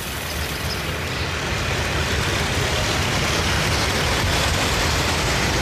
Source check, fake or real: real